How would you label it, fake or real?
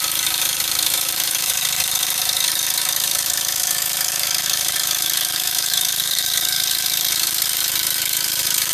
fake